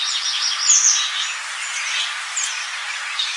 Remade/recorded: recorded